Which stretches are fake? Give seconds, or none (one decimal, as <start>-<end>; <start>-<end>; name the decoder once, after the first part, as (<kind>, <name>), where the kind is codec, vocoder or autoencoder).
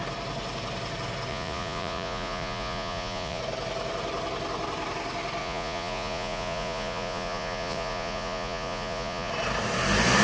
1.3-3.4 (vocoder, Vocos); 5.4-9.3